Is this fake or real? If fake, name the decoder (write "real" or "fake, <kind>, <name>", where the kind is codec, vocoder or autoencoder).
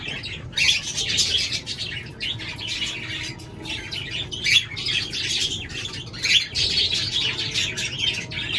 real